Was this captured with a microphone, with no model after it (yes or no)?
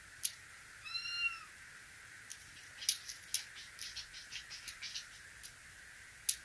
yes